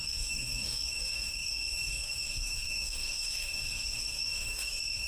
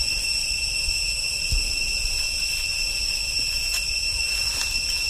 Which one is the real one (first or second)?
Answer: second